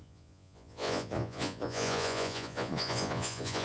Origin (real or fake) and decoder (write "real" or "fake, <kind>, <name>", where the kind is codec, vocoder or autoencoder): fake, vocoder, Vocos